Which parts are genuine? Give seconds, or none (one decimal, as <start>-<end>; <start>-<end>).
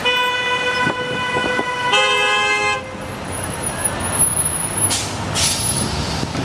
0.0-1.4; 1.9-4.3; 4.8-6.4